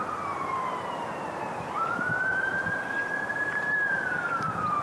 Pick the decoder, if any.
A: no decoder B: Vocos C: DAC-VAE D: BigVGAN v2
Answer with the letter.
D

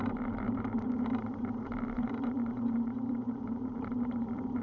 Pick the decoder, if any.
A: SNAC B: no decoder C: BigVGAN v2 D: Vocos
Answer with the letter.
C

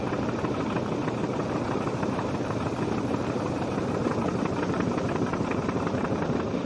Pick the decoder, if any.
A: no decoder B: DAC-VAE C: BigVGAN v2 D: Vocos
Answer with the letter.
C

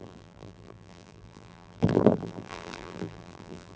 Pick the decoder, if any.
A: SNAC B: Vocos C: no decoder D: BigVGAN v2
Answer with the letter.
D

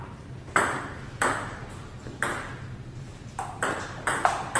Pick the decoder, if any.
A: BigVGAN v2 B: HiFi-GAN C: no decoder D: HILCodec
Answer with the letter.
A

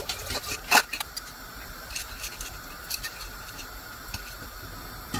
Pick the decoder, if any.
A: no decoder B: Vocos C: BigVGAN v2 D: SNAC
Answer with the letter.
C